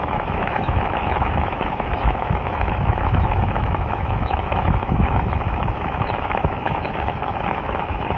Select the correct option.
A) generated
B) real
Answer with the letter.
A